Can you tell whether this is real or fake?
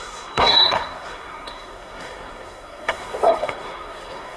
fake